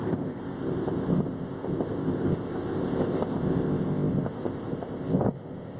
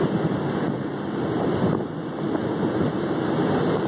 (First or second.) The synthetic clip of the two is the first